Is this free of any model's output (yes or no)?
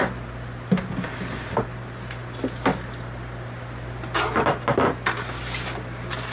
yes